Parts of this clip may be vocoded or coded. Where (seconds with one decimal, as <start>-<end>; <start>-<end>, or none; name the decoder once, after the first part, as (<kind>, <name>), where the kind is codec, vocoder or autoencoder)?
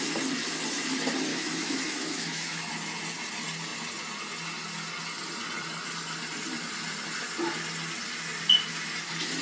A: 1.3-2.7 (autoencoder, DAC-VAE)